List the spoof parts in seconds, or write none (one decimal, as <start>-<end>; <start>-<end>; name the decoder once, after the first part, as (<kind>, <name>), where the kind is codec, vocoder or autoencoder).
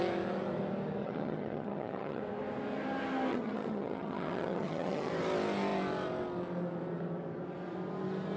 1.0-2.2 (vocoder, HiFi-GAN); 3.3-5.1